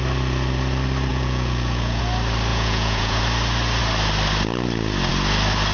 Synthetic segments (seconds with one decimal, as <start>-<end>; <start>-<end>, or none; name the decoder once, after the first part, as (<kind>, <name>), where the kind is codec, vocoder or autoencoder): 1.1-2.0 (vocoder, Vocos); 2.5-3.2